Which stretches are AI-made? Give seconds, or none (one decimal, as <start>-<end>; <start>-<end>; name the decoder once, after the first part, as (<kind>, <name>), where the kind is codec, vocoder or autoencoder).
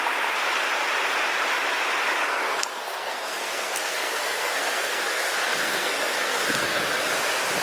2.2-6.8 (codec, SNAC)